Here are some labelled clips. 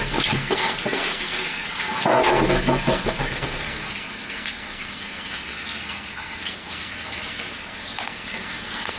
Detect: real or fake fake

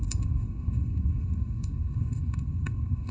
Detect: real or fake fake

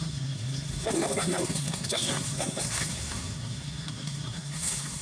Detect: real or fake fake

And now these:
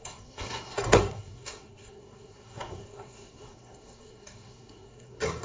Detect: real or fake fake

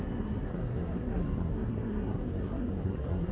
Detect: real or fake fake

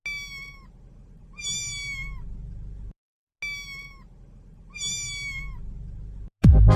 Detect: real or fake real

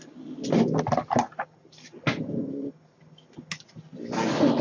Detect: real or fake real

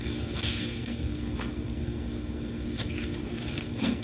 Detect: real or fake fake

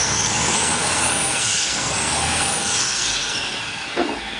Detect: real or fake fake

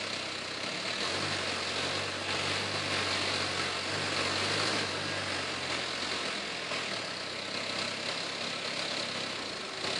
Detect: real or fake real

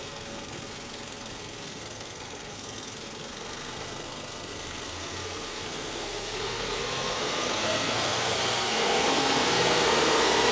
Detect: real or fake fake